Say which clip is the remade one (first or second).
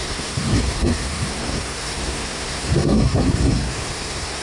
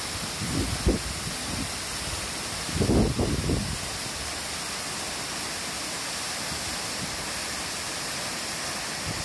first